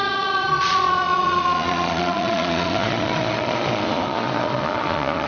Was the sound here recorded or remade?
remade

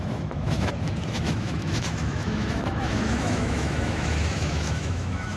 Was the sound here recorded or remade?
remade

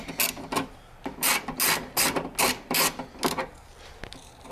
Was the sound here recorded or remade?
recorded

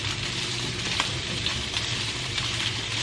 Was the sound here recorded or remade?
remade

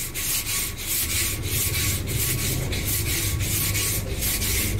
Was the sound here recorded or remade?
recorded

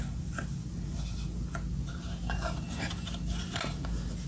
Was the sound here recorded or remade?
recorded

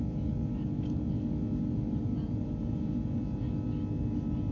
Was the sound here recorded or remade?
recorded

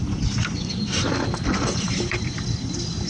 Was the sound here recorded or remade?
remade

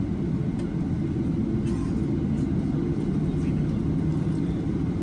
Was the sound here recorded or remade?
recorded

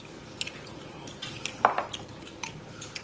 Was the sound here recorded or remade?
recorded